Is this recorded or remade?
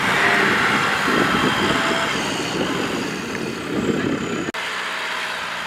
recorded